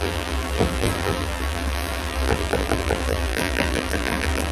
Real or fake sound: fake